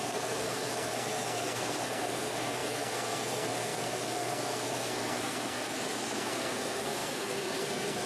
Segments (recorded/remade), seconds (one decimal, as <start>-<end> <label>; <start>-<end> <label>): 0.0-8.1 remade